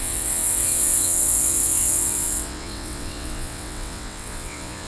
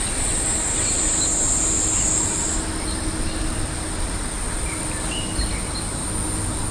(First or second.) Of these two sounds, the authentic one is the second